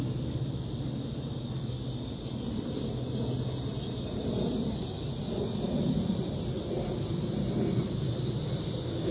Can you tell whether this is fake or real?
real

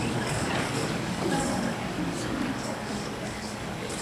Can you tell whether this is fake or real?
fake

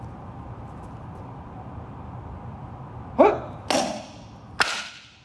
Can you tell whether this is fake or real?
real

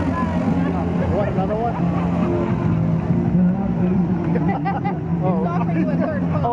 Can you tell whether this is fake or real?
real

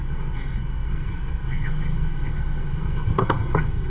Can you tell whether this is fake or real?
fake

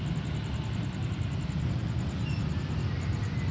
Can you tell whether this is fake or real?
real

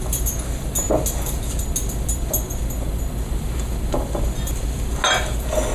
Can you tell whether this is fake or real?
real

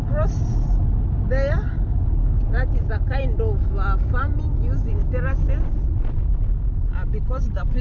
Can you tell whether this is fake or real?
real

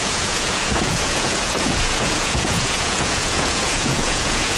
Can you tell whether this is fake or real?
fake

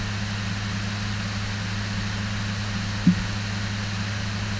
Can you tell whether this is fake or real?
real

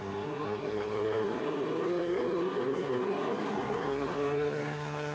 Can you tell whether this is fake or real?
fake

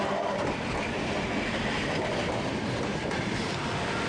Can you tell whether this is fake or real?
real